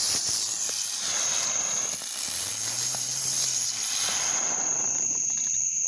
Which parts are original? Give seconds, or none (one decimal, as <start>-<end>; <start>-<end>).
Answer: 0.0-1.9; 2.5-3.1